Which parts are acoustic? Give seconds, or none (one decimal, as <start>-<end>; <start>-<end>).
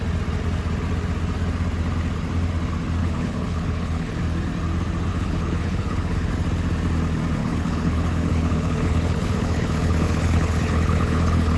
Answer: 0.0-3.0; 4.2-5.1; 6.3-7.4